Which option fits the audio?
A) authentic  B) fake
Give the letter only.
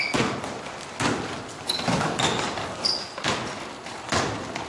A